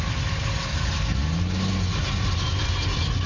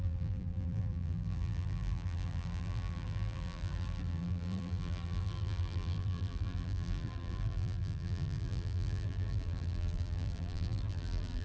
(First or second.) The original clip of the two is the first